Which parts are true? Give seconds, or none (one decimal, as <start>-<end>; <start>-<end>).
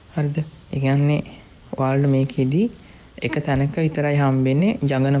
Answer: 0.0-5.2